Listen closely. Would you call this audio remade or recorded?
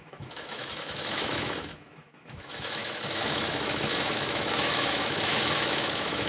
remade